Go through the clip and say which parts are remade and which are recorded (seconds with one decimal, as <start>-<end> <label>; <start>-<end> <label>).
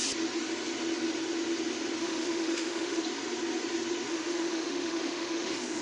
0.0-2.0 recorded; 2.0-3.0 remade; 3.0-4.1 recorded; 4.1-5.8 remade